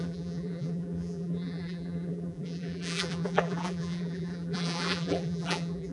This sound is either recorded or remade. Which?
remade